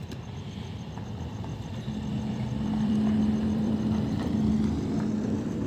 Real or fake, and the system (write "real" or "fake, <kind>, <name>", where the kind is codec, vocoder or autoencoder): fake, vocoder, BigVGAN v2